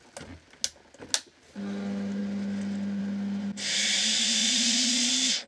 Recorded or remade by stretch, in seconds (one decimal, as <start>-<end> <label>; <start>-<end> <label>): 0.0-4.4 recorded; 4.4-5.1 remade; 5.1-5.5 recorded